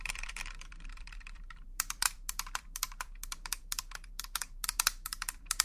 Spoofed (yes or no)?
yes